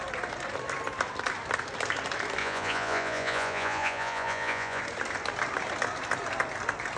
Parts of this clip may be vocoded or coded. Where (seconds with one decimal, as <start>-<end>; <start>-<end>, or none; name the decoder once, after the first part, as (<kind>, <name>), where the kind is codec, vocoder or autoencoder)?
2.4-4.8 (vocoder, Vocos)